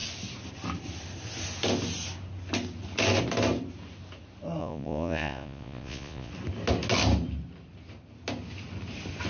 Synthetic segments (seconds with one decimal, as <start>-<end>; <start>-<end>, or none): 4.6-6.3